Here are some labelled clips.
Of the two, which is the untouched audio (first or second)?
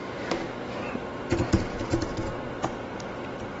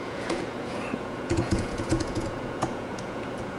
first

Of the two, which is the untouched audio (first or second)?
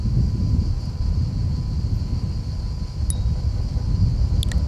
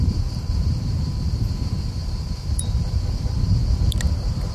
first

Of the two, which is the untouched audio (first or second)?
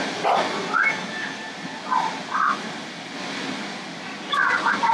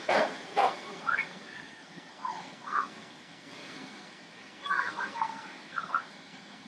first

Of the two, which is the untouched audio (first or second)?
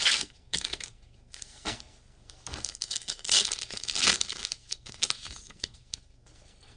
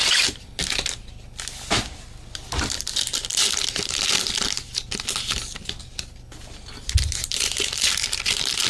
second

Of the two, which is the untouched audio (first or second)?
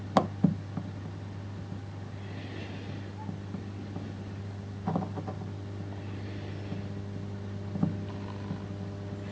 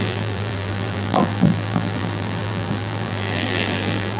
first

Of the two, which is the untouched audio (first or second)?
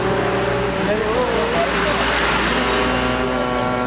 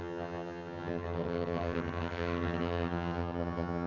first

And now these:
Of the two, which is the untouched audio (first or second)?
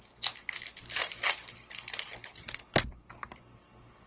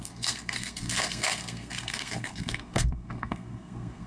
first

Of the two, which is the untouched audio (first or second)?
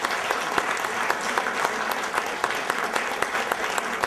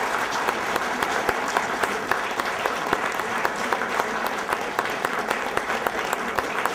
first